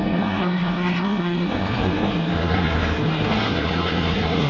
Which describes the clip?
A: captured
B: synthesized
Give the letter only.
B